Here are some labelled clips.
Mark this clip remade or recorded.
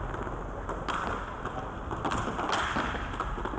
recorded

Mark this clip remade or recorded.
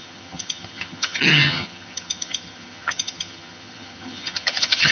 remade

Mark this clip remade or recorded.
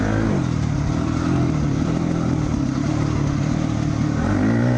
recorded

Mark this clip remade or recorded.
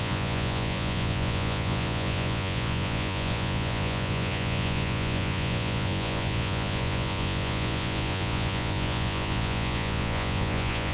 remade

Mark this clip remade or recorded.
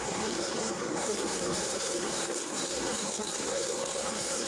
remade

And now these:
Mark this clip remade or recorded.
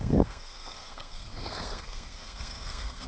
remade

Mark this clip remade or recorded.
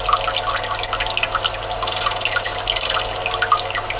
recorded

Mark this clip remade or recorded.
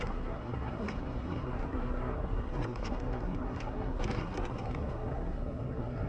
remade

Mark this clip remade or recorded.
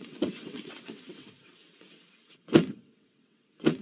remade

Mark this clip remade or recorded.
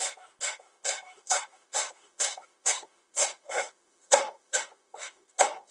remade